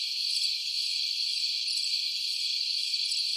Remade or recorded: remade